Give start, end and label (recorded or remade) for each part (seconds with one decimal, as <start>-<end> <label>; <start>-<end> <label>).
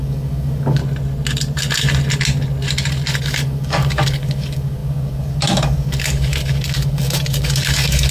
0.0-0.8 remade; 0.8-3.2 recorded; 3.2-8.1 remade